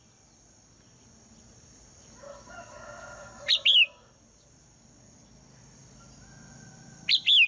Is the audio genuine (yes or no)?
yes